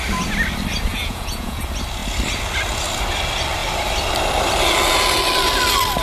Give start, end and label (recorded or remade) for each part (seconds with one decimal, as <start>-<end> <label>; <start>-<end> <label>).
0.0-0.9 recorded; 0.9-1.6 remade; 1.6-6.0 recorded

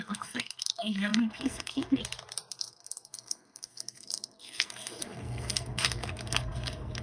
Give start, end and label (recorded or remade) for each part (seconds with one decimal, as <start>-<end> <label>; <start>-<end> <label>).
0.0-2.0 remade; 2.0-2.5 recorded; 2.5-7.0 remade